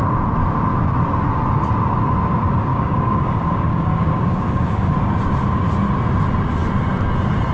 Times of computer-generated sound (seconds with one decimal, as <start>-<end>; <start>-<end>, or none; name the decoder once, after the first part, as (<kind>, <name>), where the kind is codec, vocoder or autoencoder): 2.7-4.9 (codec, DAC)